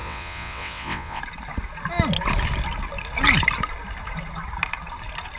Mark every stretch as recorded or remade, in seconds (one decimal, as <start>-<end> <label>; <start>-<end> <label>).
0.0-1.2 remade; 1.2-5.4 recorded